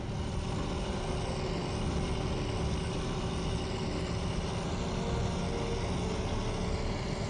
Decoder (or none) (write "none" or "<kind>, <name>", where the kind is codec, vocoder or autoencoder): none